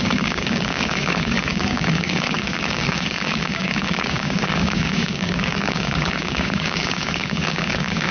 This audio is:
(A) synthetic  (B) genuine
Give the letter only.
A